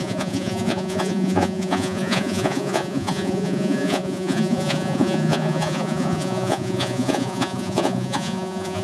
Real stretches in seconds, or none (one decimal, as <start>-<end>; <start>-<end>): none

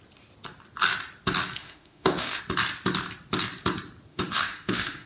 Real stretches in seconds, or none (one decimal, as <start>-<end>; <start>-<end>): 0.0-1.6; 2.4-4.1

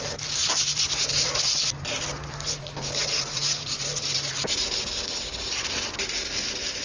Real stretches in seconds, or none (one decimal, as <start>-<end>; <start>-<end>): 0.0-6.8

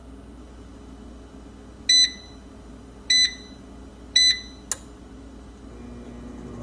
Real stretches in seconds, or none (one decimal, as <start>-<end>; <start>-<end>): 0.0-6.6

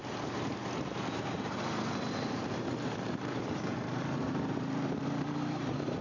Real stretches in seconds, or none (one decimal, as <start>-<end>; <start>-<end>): none

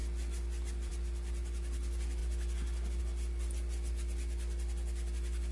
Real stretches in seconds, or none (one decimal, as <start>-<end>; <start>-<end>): 0.0-5.5

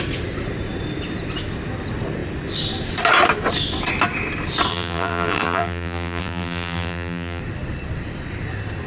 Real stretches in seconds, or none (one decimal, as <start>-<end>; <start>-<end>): 0.0-4.7; 7.4-8.9